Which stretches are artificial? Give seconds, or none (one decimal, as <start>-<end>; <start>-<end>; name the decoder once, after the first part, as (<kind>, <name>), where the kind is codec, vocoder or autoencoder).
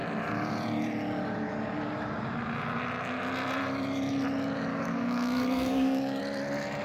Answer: 4.7-6.2 (codec, DAC)